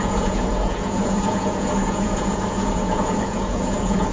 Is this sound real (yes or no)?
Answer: no